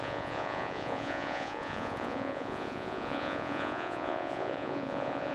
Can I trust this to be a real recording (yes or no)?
no